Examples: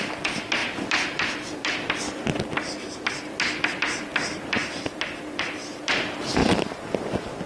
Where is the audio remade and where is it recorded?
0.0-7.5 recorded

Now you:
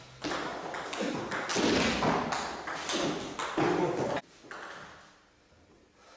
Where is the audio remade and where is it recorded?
0.0-6.2 recorded

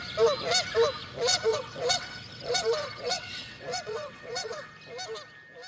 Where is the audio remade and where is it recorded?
0.0-1.3 recorded; 1.3-4.7 remade; 4.7-5.7 recorded

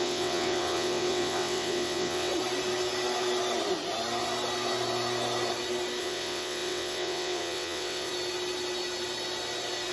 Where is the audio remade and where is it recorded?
0.0-2.3 remade; 2.3-6.0 recorded; 6.0-8.1 remade; 8.1-9.9 recorded

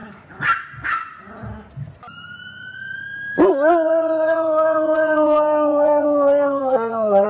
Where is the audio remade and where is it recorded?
0.0-3.7 recorded; 3.7-7.3 remade